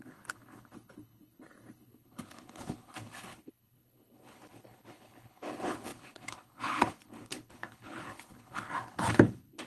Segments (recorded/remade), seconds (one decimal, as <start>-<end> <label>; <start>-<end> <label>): 0.0-9.7 remade